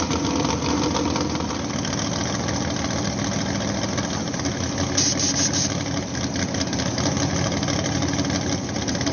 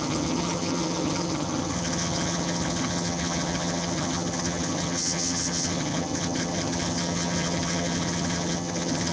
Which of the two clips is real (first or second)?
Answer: first